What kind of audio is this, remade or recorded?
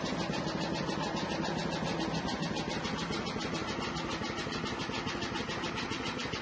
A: recorded